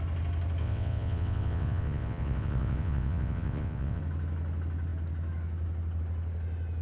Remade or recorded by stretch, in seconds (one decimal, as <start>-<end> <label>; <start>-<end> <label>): 0.0-0.6 recorded; 0.6-4.0 remade; 4.0-6.8 recorded